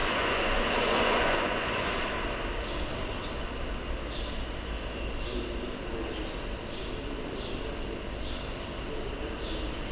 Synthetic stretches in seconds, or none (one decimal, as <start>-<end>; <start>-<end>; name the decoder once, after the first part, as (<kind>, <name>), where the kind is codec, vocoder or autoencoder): 0.0-1.9 (vocoder, Vocos)